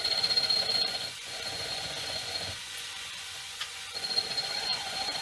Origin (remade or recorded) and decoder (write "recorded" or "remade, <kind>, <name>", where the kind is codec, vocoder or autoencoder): remade, vocoder, Vocos